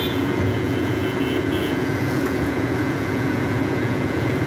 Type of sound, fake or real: fake